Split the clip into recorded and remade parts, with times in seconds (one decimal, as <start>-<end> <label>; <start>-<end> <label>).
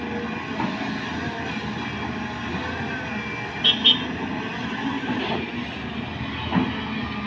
0.0-4.6 recorded; 4.6-5.5 remade; 5.5-7.3 recorded